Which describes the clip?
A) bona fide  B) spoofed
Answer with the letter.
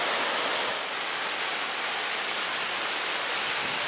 A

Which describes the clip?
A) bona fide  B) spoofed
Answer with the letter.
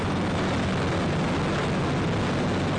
A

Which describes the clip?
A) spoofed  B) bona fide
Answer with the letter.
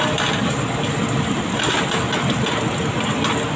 B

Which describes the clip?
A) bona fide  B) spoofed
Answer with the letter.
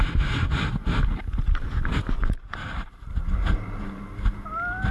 A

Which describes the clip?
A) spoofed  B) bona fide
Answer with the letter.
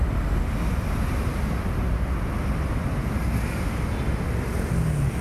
B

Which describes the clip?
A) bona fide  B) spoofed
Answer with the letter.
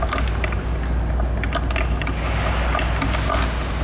A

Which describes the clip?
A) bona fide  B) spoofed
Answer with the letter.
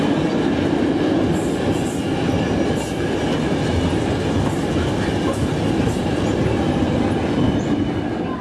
A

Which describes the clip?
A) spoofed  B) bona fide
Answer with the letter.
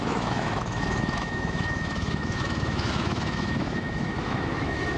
A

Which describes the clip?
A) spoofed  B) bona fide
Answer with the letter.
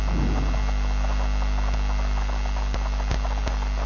B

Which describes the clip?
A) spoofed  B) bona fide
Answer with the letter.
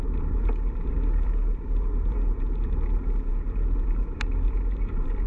A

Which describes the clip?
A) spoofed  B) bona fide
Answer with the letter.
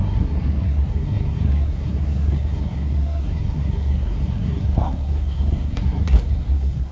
A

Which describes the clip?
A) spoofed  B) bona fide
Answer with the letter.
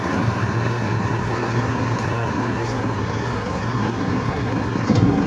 A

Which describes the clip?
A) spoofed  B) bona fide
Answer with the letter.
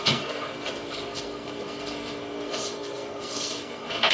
A